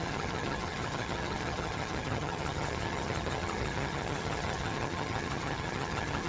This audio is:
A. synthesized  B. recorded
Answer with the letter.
A